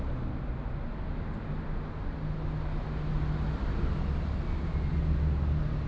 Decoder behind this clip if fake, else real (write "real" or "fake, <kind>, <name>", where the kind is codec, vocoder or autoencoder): real